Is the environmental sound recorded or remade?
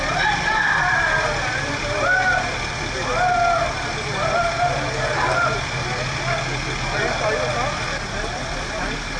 recorded